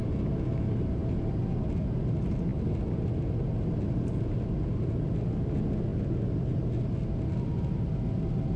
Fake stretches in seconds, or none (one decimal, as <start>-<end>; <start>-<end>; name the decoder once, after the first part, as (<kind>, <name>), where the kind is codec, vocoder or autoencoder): none